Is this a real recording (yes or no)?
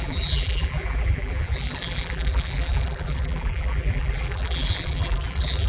no